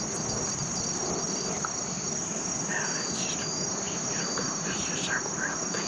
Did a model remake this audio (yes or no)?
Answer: no